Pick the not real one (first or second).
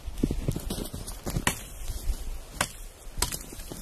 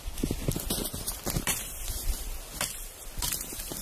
second